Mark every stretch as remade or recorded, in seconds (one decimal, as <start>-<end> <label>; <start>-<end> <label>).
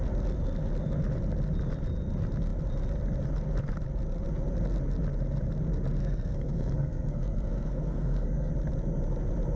0.0-6.0 recorded; 6.0-8.5 remade; 8.5-9.6 recorded